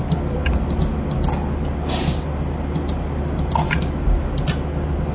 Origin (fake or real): real